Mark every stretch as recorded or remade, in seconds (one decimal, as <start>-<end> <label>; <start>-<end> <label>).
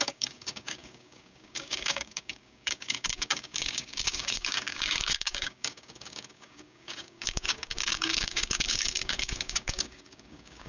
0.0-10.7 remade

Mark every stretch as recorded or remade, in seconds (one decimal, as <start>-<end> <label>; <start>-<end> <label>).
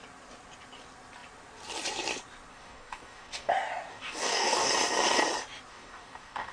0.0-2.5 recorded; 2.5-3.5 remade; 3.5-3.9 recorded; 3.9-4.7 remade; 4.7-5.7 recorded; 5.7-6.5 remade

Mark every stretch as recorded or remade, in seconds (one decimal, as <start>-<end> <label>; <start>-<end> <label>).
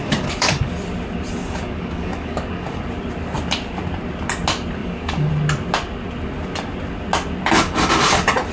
0.0-0.7 remade; 0.7-1.4 recorded; 1.4-2.8 remade; 2.8-4.8 recorded; 4.8-5.3 remade; 5.3-8.5 recorded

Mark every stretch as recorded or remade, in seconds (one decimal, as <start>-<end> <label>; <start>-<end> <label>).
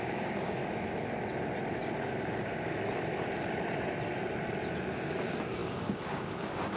0.0-0.6 remade; 0.6-4.7 recorded; 4.7-6.8 remade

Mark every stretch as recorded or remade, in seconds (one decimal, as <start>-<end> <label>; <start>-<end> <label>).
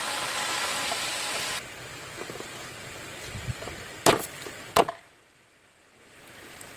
0.0-6.8 recorded